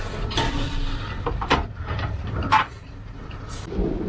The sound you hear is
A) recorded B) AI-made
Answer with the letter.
B